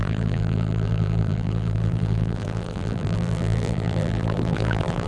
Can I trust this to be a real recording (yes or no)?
no